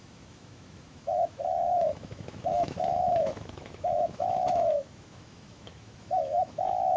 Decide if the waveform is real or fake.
fake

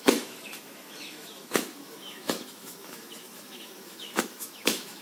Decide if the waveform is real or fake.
fake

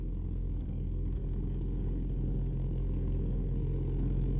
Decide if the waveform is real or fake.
fake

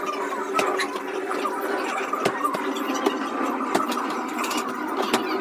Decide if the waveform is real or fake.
real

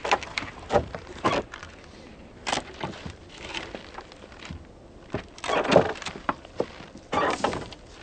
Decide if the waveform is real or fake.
fake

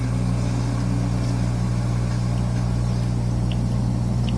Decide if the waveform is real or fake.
real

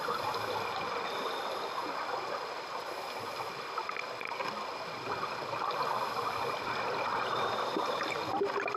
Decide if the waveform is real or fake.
real